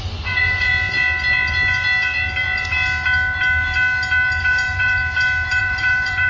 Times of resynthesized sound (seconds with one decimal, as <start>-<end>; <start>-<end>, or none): 0.0-0.7; 4.4-5.0; 5.6-6.3